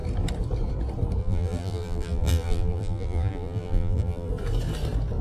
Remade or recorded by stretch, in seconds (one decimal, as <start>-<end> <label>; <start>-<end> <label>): 0.0-1.2 recorded; 1.2-4.3 remade; 4.3-5.2 recorded